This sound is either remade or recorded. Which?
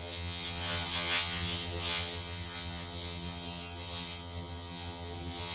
remade